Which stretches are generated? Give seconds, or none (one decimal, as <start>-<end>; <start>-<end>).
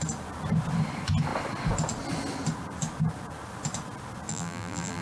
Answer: 4.3-5.0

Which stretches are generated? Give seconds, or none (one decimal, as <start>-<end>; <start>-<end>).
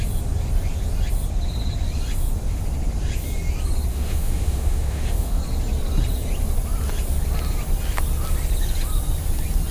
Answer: 3.9-5.4